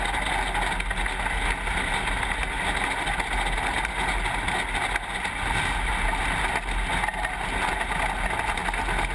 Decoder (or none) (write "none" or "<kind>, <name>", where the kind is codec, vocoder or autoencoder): none